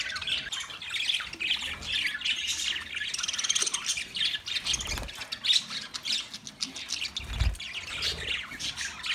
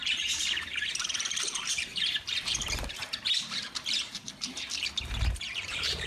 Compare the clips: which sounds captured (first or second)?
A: first